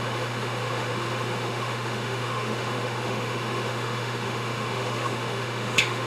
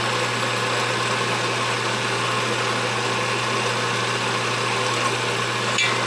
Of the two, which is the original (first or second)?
second